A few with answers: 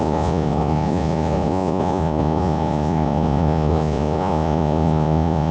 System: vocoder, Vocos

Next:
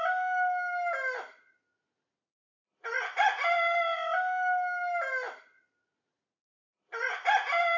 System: none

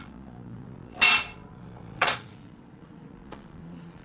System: vocoder, Vocos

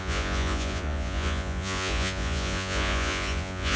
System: vocoder, Vocos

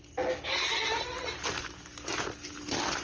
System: none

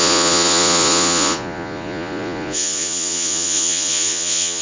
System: vocoder, Vocos